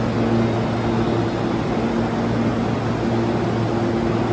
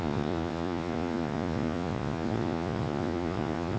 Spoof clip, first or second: second